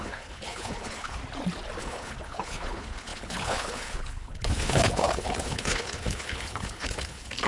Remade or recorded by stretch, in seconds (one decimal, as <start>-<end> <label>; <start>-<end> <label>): 0.0-1.2 remade; 1.2-1.8 recorded; 1.8-7.5 remade